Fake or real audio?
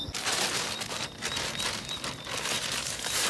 real